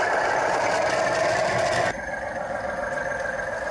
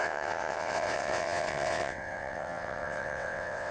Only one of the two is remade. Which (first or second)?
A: second